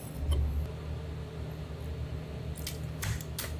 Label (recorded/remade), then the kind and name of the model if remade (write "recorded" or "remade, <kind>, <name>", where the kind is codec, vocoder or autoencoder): recorded